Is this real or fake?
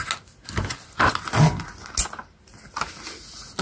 real